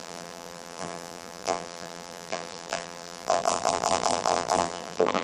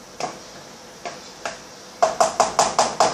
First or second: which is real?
second